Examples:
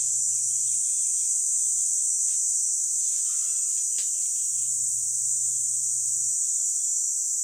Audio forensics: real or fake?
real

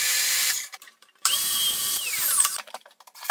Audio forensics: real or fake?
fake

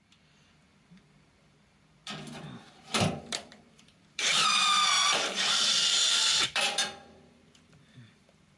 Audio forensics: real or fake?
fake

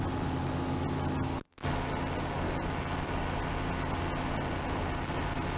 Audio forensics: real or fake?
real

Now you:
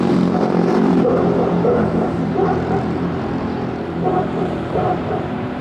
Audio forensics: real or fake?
fake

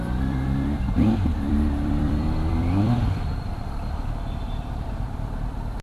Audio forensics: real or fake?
fake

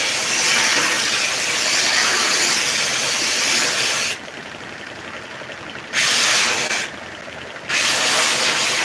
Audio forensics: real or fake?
real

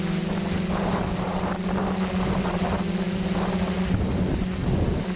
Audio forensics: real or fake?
real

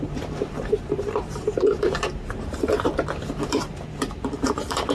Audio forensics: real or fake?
fake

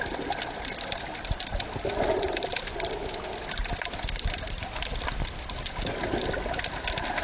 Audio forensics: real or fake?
real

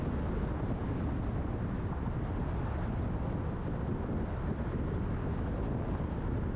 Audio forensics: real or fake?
real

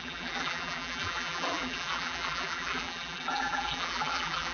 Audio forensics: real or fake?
fake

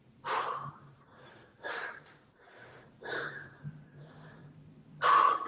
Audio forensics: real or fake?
fake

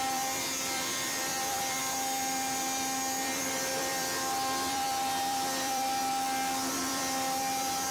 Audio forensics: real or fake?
fake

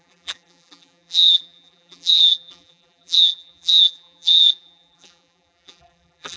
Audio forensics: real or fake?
fake